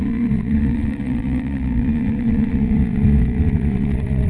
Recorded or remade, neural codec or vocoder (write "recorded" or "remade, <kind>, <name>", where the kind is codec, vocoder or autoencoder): remade, vocoder, Vocos